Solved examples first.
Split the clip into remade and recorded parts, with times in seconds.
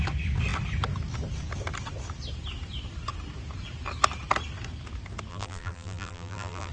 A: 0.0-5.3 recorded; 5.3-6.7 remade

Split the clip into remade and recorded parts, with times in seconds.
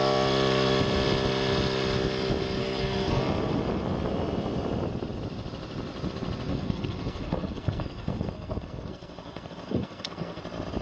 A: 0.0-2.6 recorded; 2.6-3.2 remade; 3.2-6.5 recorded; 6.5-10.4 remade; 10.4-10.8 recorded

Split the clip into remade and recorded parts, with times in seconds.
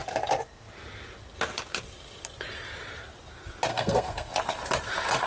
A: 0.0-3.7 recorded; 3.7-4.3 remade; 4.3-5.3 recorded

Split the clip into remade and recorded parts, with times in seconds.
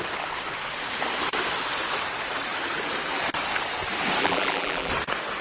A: 0.0-4.2 recorded; 4.2-4.9 remade; 4.9-5.4 recorded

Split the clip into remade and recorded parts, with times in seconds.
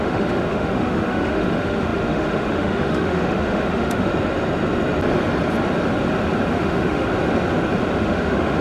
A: 0.0-4.1 remade; 4.1-6.5 recorded; 6.5-7.1 remade; 7.1-8.0 recorded; 8.0-8.6 remade